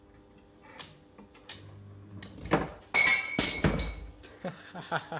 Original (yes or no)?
yes